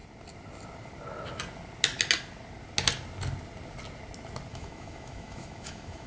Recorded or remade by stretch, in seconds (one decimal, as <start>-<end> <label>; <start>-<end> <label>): 0.0-4.5 recorded; 4.5-6.1 remade